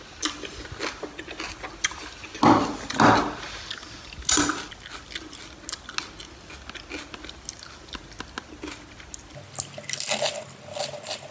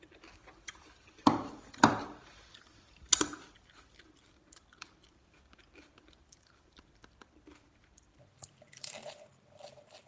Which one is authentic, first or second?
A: first